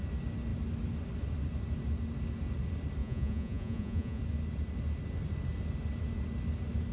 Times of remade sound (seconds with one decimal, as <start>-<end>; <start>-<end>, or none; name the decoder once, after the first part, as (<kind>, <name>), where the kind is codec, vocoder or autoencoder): 3.0-4.2 (vocoder, Vocos)